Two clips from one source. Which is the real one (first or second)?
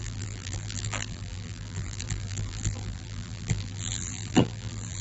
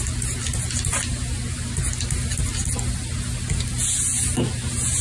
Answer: second